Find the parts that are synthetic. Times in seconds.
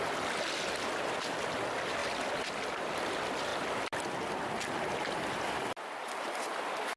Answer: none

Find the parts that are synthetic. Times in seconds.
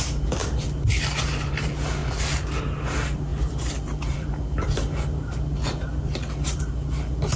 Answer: 2.0-2.6; 3.3-4.3; 5.9-6.7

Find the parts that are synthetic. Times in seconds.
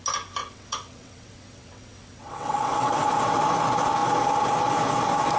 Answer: 0.4-3.1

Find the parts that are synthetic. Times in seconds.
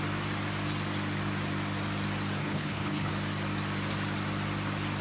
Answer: 2.4-3.1